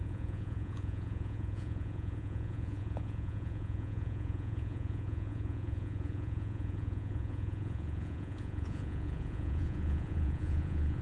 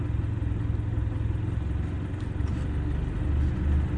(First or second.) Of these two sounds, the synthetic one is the first